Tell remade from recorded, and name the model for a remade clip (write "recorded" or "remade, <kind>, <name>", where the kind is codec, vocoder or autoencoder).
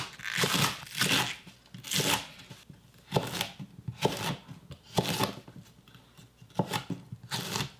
recorded